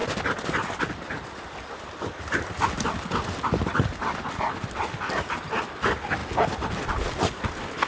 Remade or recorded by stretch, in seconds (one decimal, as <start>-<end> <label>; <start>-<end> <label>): 0.0-7.9 recorded